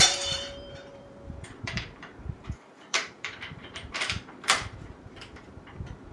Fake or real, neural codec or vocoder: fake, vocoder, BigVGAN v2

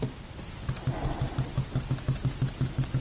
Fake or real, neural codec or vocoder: real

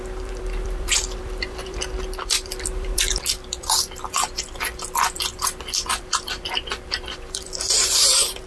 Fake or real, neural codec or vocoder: fake, vocoder, BigVGAN v2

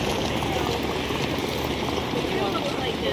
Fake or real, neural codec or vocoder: real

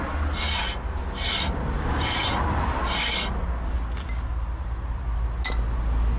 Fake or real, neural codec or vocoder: real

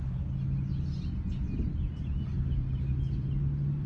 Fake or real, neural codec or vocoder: real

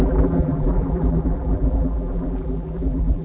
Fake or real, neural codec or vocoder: fake, vocoder, BigVGAN v2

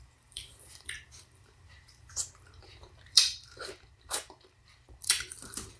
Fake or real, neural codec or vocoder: fake, vocoder, BigVGAN v2